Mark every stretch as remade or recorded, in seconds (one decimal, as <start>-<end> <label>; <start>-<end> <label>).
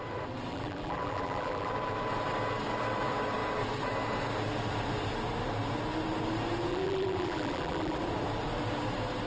0.0-0.5 recorded; 0.5-1.7 remade; 1.7-6.7 recorded; 6.7-8.0 remade; 8.0-9.3 recorded